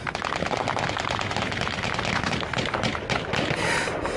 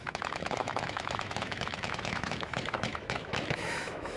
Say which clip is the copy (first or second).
second